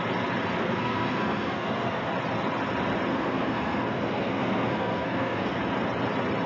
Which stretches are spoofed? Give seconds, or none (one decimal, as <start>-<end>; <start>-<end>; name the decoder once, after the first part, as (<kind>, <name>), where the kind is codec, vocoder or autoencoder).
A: 0.6-2.1 (codec, SNAC); 3.1-5.6